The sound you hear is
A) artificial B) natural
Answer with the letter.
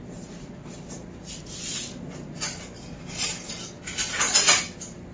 B